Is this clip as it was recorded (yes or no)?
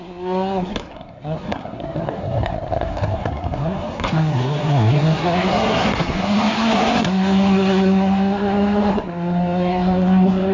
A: no